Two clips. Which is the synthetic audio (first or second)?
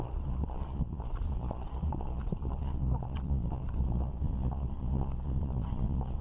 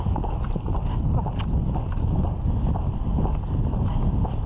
first